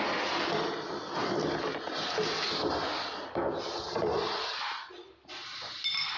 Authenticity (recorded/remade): recorded